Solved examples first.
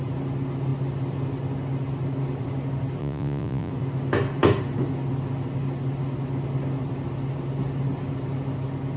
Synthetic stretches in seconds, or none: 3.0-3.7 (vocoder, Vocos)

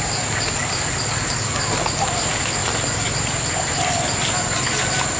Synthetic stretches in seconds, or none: none

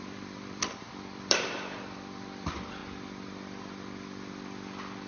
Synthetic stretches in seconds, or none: 0.0-2.8 (vocoder, BigVGAN v2)

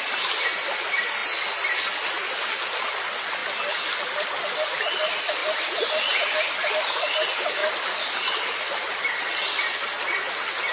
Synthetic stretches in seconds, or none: none

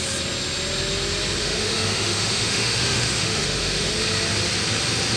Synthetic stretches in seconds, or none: 1.4-3.9 (autoencoder, DAC-VAE)

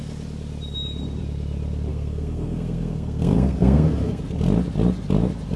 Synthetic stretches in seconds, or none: 1.9-4.2 (codec, SNAC)